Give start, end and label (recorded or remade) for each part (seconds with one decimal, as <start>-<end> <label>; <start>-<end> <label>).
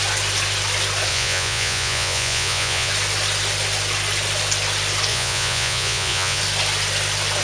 0.0-1.1 recorded; 1.1-2.9 remade; 2.9-5.1 recorded; 5.1-6.4 remade; 6.4-7.4 recorded